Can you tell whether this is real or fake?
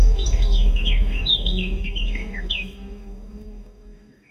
fake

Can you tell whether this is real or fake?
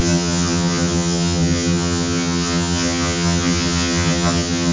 fake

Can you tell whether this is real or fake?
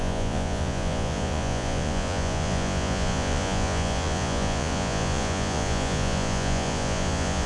fake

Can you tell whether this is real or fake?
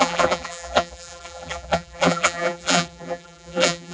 fake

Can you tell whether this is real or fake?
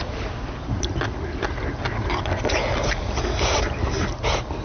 real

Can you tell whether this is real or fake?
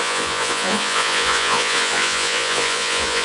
fake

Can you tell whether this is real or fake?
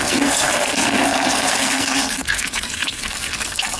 fake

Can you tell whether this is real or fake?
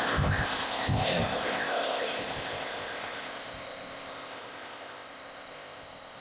fake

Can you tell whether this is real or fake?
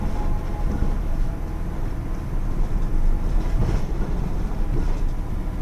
real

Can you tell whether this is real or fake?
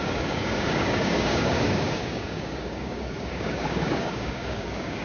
fake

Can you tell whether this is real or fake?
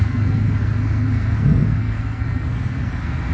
fake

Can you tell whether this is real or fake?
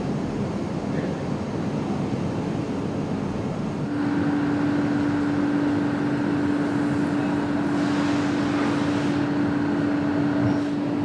real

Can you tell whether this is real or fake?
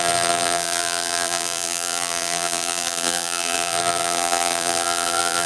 fake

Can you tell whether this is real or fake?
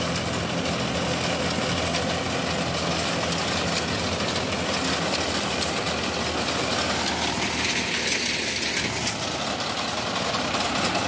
real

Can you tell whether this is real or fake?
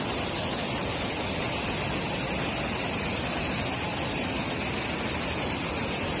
real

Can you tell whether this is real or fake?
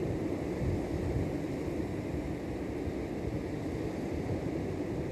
real